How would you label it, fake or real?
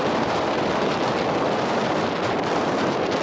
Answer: real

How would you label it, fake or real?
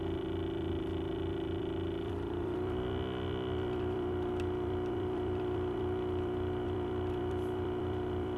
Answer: fake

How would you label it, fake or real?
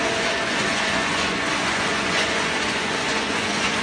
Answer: fake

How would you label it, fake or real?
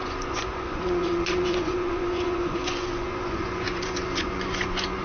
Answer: fake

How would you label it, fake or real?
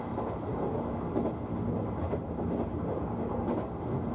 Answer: real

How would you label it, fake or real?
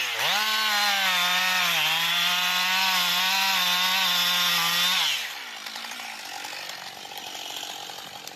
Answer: real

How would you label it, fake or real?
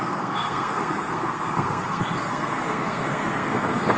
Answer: fake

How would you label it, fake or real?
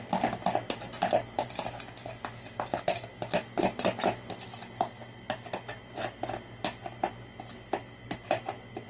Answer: fake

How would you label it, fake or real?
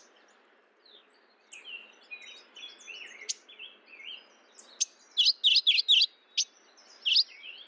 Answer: real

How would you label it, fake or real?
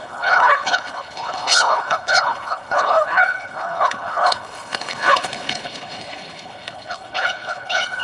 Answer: fake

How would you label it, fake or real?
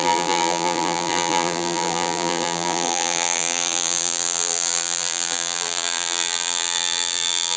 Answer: fake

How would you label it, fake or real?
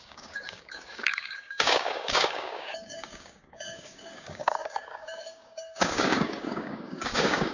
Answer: fake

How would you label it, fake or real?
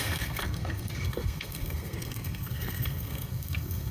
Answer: fake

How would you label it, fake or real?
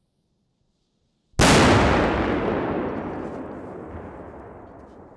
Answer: real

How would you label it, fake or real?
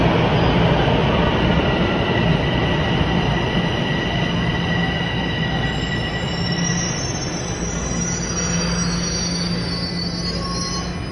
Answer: real